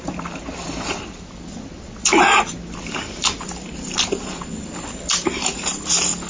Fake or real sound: fake